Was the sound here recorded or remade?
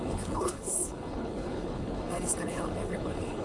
remade